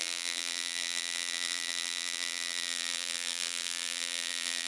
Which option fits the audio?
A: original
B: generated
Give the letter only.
B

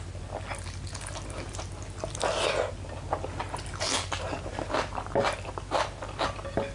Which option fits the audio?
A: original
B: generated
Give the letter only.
A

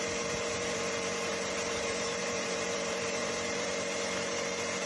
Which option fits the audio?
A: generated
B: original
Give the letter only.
A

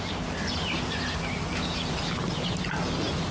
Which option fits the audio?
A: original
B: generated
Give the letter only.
A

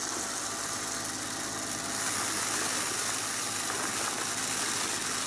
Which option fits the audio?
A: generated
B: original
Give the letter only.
B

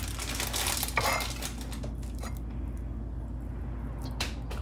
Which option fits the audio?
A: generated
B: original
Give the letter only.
B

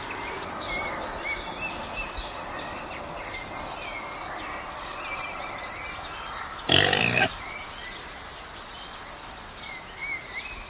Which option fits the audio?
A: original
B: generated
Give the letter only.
A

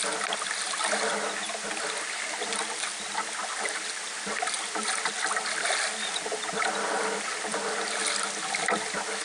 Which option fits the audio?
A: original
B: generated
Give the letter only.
A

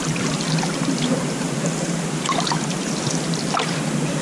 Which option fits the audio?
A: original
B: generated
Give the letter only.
B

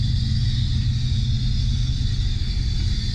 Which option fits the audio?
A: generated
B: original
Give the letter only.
B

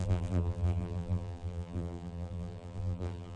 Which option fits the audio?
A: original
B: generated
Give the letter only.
B